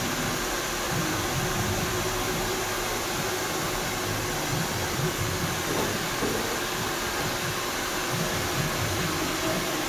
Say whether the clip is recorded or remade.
remade